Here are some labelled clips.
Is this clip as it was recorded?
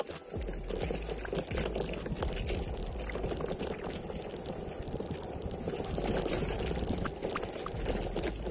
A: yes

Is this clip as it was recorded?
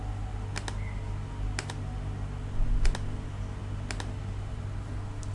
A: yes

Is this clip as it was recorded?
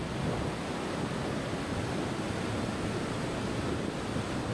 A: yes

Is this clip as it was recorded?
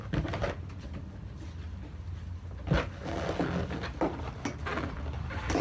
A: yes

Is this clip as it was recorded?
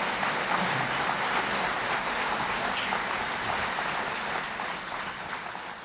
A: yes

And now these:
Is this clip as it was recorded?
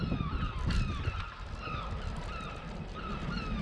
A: yes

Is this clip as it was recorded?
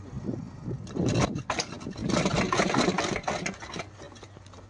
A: yes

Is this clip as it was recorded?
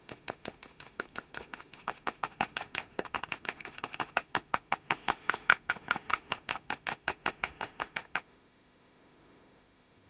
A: no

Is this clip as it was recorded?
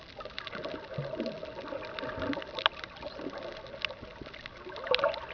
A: yes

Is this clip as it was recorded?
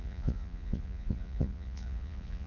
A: no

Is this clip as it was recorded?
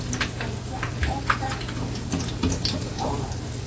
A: yes